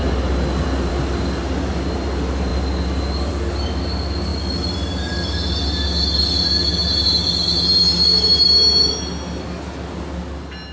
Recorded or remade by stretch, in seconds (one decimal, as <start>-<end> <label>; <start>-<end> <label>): 0.0-10.7 recorded